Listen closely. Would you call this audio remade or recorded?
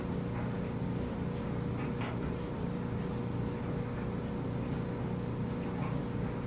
recorded